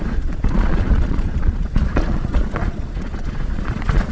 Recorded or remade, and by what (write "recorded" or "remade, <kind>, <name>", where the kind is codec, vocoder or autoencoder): remade, vocoder, Vocos